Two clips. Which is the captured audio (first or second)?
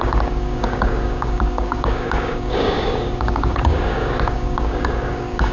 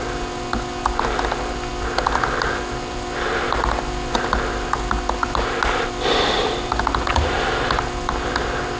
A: second